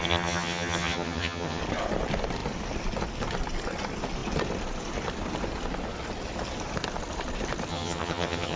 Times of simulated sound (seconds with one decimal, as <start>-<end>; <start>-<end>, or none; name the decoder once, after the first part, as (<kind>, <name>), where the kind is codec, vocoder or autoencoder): 0.0-1.6 (vocoder, HiFi-GAN); 7.7-8.6